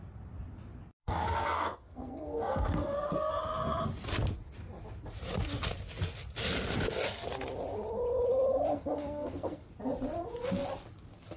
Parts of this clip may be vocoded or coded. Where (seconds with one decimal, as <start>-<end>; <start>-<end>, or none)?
1.0-3.3; 8.7-9.6